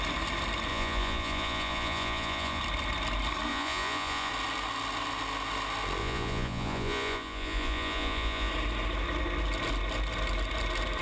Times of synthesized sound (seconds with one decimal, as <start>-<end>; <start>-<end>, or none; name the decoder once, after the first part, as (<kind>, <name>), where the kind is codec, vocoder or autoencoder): 0.7-2.6 (vocoder, Vocos); 3.5-4.3; 6.0-8.5